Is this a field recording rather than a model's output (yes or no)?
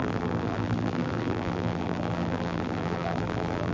no